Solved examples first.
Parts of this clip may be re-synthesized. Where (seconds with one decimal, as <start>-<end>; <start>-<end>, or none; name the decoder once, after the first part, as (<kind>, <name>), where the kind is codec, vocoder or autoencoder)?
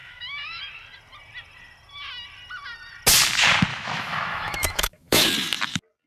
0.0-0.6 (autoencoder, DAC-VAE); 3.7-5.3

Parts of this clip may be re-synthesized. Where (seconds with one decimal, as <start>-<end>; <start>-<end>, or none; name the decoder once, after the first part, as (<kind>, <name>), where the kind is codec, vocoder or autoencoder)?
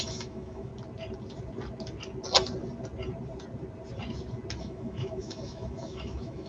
0.0-0.7 (autoencoder, DAC-VAE); 4.6-6.5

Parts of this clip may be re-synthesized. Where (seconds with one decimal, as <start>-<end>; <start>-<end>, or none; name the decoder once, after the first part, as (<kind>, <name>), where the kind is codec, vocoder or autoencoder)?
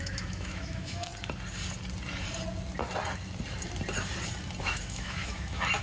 0.0-1.1 (autoencoder, DAC-VAE); 4.6-5.8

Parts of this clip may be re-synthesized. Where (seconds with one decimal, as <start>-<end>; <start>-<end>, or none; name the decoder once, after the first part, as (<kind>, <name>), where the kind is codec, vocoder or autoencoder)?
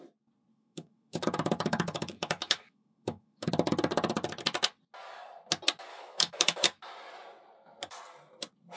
0.5-3.5 (autoencoder, DAC-VAE); 5.9-6.8